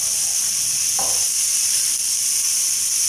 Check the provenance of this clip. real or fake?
real